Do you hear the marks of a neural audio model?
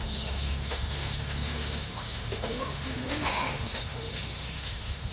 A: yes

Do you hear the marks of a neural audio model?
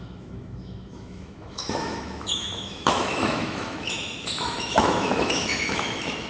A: yes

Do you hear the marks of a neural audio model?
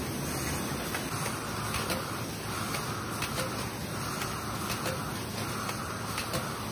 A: no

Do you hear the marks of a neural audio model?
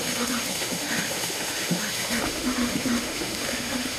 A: yes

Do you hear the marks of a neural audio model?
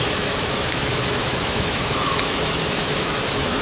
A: yes